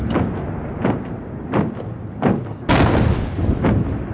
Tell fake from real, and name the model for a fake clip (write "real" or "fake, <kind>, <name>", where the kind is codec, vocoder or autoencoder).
real